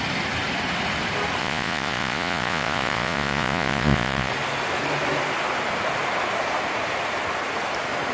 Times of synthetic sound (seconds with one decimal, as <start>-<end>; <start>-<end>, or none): 1.4-4.3